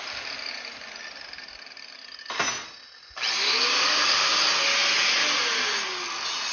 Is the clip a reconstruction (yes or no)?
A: no